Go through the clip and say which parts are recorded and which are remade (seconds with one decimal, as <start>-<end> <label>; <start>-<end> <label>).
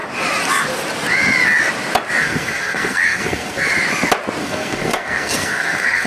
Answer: 0.0-2.2 recorded; 2.2-3.7 remade; 3.7-4.4 recorded; 4.4-6.1 remade